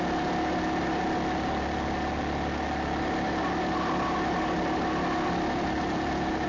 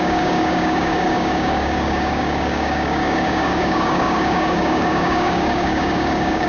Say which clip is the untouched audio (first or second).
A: first